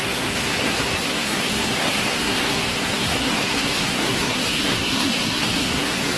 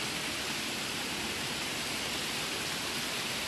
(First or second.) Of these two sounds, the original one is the second